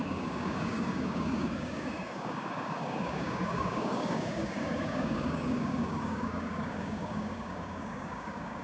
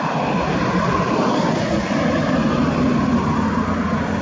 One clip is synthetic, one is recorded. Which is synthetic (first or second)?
first